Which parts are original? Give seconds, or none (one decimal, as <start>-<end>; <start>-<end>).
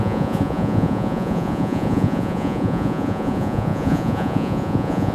none